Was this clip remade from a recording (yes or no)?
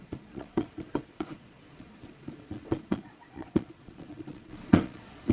yes